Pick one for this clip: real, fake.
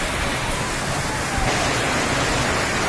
real